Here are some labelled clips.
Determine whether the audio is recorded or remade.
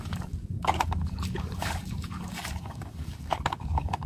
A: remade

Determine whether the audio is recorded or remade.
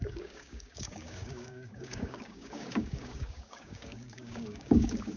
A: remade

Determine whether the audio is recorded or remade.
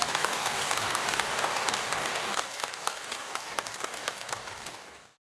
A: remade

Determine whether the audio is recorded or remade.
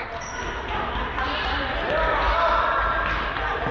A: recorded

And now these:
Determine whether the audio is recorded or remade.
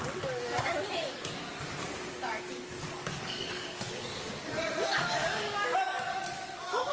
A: remade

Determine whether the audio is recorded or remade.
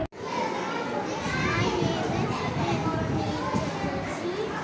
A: recorded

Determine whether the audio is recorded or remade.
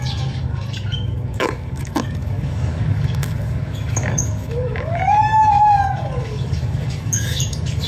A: remade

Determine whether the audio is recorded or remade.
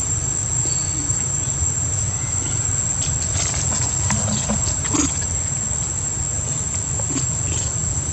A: recorded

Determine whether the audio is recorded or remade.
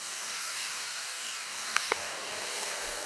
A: remade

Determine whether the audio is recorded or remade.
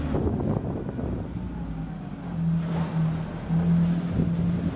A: recorded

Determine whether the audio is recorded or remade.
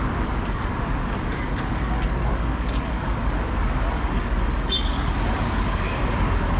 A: remade